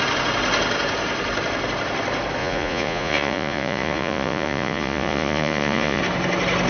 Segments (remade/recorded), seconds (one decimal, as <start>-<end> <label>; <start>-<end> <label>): 0.0-2.4 recorded; 2.4-6.0 remade; 6.0-6.7 recorded